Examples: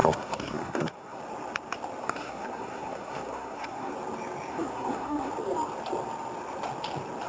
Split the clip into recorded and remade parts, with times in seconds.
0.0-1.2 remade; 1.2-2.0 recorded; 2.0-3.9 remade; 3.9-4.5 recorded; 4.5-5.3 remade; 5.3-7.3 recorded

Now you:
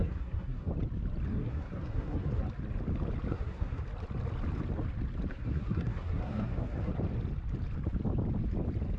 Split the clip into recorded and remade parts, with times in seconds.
0.0-0.7 remade; 0.7-1.3 recorded; 1.3-2.4 remade; 2.4-3.3 recorded; 3.3-3.8 remade; 3.8-5.3 recorded; 5.3-6.9 remade; 6.9-9.0 recorded

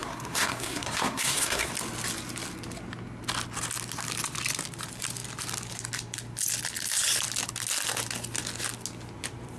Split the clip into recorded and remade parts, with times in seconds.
0.0-1.7 remade; 1.7-9.6 recorded

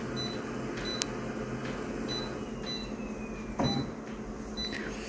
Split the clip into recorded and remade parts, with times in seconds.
0.0-5.1 recorded

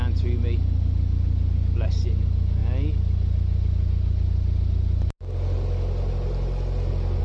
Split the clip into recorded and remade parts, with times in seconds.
0.0-7.2 recorded

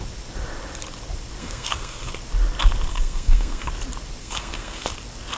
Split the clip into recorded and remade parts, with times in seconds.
0.0-1.4 recorded; 1.4-2.1 remade; 2.1-2.9 recorded; 2.9-3.7 remade; 3.7-4.2 recorded; 4.2-4.9 remade; 4.9-5.4 recorded